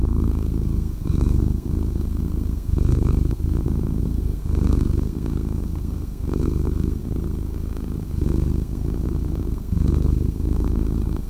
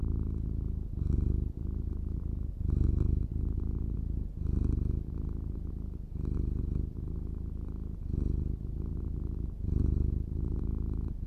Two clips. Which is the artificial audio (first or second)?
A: first